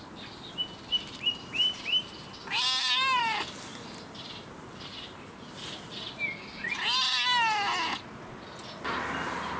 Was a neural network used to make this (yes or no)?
no